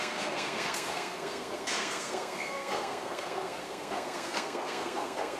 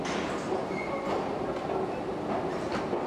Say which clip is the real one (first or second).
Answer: second